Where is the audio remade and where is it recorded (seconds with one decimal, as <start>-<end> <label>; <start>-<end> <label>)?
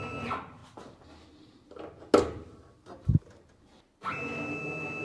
0.0-5.0 recorded